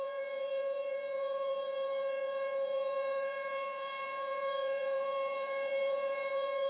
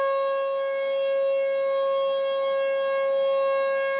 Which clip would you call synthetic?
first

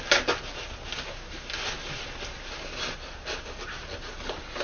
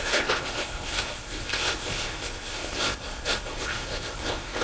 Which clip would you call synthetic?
second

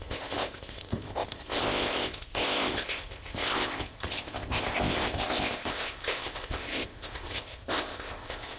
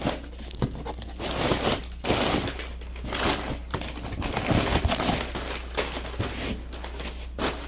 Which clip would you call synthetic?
first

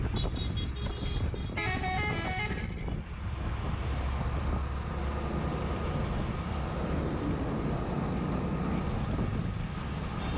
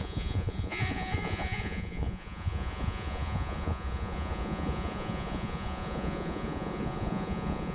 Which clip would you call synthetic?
second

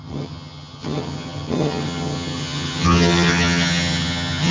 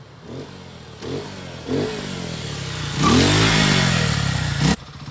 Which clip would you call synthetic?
first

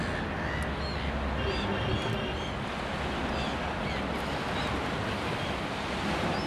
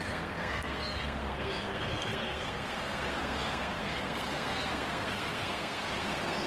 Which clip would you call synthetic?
second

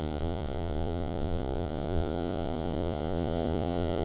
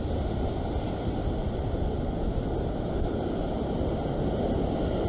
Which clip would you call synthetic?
first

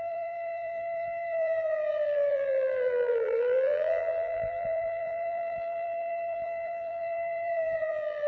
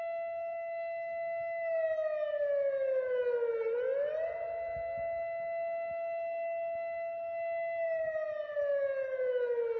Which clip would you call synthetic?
first